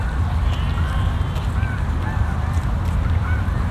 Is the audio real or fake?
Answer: real